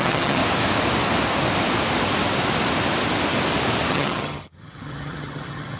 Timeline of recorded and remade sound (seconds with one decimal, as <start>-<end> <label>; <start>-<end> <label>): 0.0-0.4 remade; 0.4-3.9 recorded; 3.9-5.8 remade